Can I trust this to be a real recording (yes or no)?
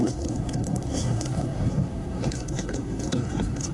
no